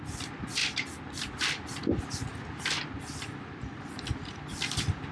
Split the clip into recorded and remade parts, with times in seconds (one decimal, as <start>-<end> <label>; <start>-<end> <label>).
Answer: 0.0-5.1 recorded